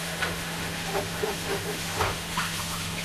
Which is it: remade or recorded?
remade